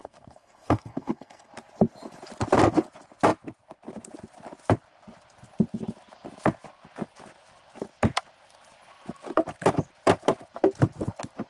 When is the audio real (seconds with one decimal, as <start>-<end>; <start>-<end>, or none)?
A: 1.5-11.5